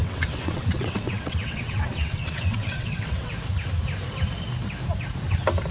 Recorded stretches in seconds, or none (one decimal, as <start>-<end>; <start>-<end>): 3.3-5.7